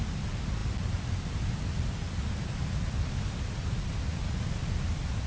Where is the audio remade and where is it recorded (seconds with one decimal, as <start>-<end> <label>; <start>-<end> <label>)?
0.0-5.3 recorded